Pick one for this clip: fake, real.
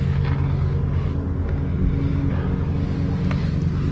real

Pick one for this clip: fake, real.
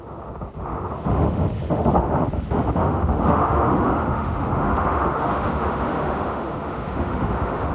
fake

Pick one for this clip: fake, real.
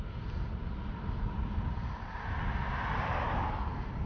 real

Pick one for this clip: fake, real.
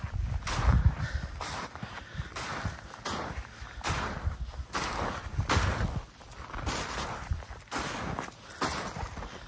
real